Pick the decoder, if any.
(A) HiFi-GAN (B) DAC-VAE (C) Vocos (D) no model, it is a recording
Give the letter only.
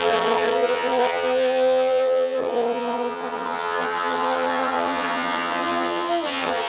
A